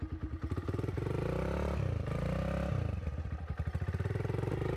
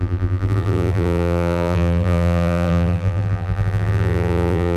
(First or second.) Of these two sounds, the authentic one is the first